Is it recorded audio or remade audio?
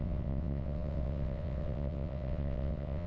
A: remade